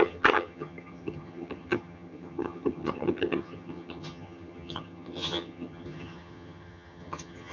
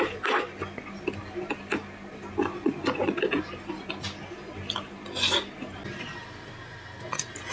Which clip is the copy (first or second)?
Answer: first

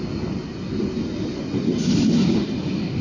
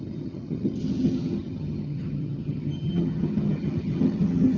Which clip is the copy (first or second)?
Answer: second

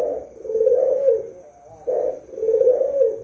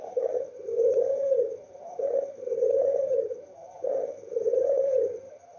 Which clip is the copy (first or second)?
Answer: second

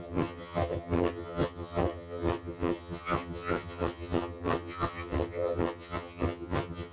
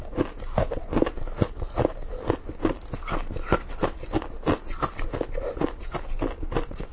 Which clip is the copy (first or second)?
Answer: first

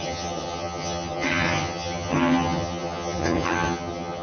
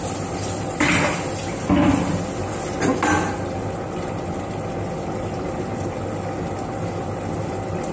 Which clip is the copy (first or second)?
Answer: first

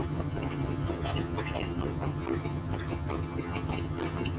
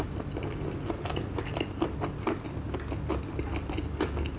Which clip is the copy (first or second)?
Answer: first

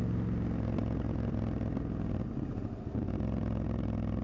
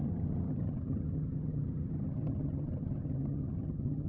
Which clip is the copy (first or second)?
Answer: second